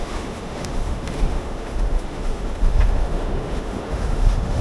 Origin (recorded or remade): remade